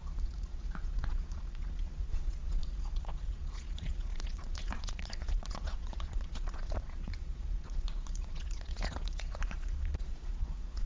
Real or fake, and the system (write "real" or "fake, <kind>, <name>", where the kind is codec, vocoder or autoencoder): fake, vocoder, Vocos